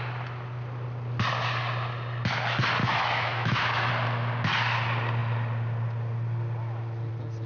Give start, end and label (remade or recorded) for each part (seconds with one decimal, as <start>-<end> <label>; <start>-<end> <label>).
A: 0.0-2.8 recorded; 2.8-3.9 remade; 3.9-7.5 recorded